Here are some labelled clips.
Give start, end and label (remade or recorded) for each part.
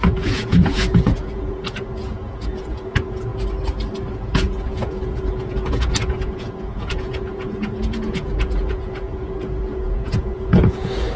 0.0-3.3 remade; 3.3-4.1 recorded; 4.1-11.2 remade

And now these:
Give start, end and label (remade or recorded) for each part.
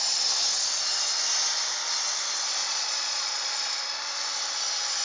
0.0-2.6 recorded; 2.6-3.7 remade; 3.7-5.0 recorded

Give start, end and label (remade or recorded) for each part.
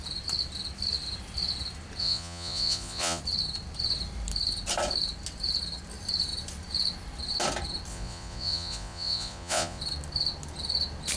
0.0-2.0 recorded; 2.0-3.2 remade; 3.2-7.9 recorded; 7.9-9.8 remade; 9.8-11.2 recorded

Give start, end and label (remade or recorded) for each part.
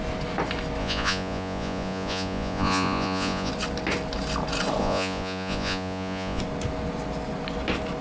0.0-0.8 recorded; 0.8-3.5 remade; 3.5-4.8 recorded; 4.8-6.4 remade; 6.4-8.0 recorded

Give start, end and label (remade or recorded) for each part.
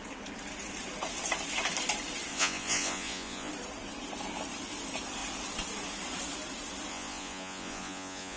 0.0-2.3 recorded; 2.3-3.5 remade; 3.5-6.9 recorded; 6.9-8.4 remade